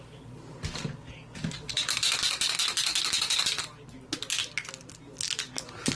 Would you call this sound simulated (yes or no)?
no